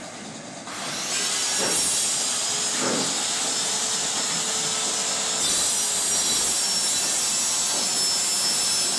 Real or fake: real